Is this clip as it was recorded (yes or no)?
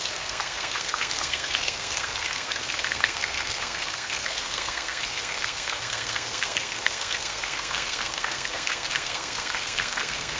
no